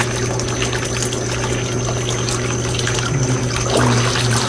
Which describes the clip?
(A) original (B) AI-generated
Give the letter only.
A